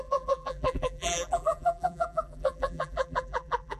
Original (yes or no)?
no